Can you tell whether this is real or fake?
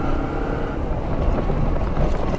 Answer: real